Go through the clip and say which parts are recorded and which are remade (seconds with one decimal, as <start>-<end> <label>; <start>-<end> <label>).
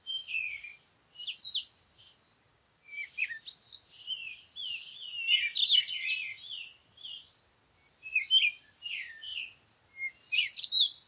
0.0-2.5 recorded; 2.5-3.2 remade; 3.2-11.1 recorded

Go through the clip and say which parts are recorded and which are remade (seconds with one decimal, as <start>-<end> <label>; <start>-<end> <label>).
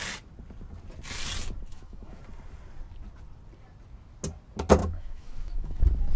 0.0-1.7 recorded; 1.7-2.2 remade; 2.2-4.8 recorded; 4.8-5.8 remade; 5.8-6.2 recorded